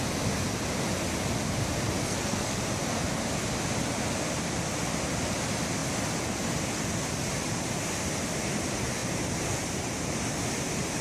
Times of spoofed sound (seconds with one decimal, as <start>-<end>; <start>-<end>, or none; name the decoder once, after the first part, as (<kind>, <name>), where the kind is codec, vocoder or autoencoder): 2.0-2.6 (codec, SNAC)